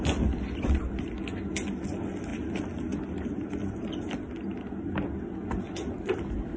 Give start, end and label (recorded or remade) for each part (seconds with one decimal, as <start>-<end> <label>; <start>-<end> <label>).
0.0-6.6 recorded